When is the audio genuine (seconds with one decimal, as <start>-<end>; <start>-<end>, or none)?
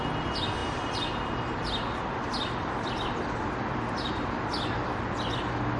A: 0.0-5.8